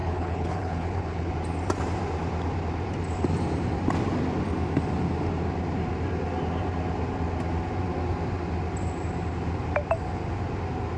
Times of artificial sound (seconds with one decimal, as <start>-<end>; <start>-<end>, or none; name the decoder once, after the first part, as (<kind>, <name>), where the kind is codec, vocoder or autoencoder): 0.0-1.3 (codec, HILCodec)